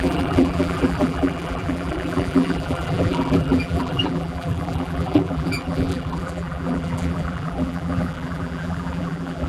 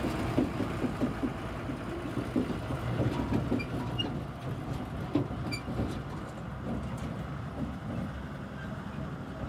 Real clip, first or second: second